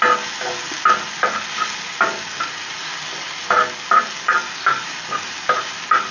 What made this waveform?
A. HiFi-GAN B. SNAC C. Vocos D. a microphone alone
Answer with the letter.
D